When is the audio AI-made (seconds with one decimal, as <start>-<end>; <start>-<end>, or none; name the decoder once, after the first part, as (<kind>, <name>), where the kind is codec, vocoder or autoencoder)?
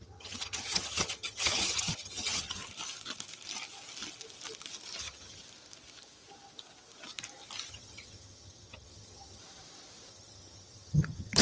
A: 0.0-2.6 (vocoder, HiFi-GAN); 5.0-5.4; 7.7-9.4; 10.1-11.4